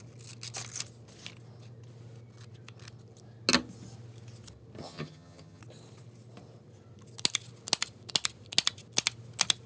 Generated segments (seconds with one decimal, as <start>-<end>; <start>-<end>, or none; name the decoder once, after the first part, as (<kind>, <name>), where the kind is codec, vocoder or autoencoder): 4.8-5.6 (vocoder, HiFi-GAN)